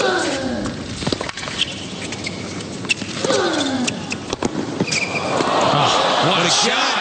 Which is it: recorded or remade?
recorded